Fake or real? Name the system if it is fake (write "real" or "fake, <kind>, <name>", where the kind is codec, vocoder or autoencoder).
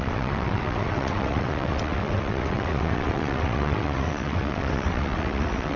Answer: fake, vocoder, WaveNeXt